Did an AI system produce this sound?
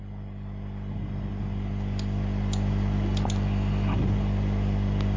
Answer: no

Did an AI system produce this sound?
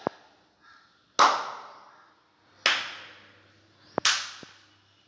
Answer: no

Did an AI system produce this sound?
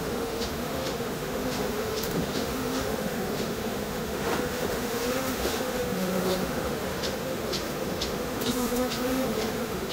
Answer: yes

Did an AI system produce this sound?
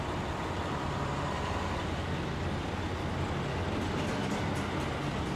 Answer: no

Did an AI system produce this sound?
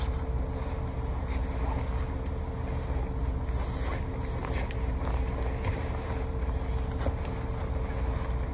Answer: no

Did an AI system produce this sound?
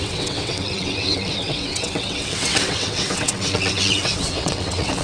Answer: yes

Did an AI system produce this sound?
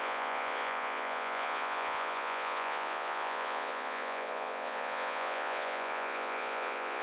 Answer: yes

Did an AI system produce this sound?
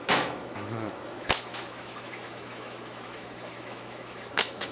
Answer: yes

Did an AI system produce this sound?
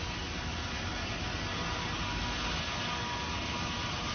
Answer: no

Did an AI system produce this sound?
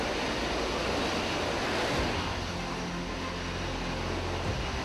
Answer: no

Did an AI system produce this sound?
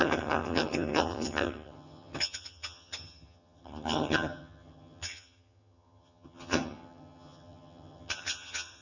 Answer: yes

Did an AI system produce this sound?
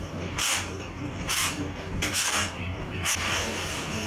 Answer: yes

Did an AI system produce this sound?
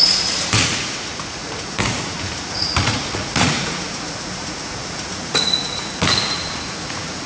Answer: yes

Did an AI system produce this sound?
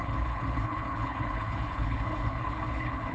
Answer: yes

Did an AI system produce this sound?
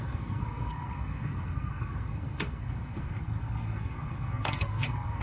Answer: yes